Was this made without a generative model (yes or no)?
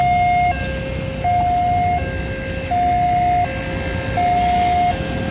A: yes